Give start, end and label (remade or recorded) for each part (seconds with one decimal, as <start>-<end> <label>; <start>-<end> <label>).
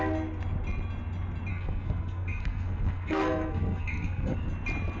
0.0-1.5 recorded; 1.5-4.5 remade; 4.5-5.0 recorded